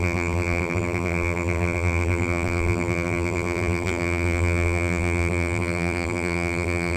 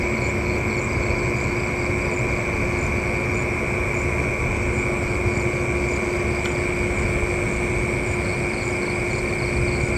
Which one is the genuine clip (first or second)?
second